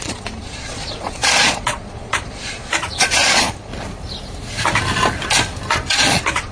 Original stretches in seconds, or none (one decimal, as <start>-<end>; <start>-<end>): 3.7-5.9